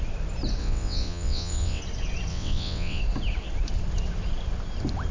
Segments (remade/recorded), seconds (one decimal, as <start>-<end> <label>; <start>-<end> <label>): 0.0-0.6 recorded; 0.6-1.8 remade; 1.8-2.3 recorded; 2.3-3.0 remade; 3.0-5.1 recorded